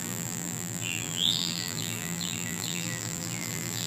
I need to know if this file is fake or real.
fake